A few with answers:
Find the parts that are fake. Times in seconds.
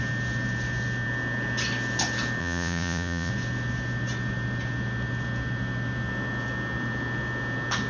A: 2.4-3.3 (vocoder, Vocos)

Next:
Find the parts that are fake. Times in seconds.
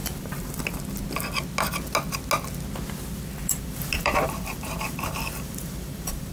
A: 0.0-0.6 (vocoder, BigVGAN v2); 3.4-6.3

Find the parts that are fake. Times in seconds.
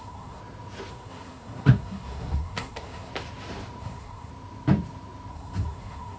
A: 0.0-0.4 (codec, SNAC); 0.9-3.1; 3.8-4.3; 5.3-6.2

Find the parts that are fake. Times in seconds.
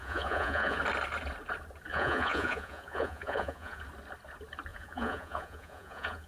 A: 0.0-0.8 (vocoder, Vocos); 1.9-3.8; 4.7-6.3